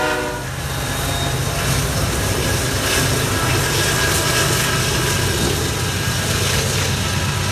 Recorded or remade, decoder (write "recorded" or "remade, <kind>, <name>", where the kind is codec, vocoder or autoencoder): recorded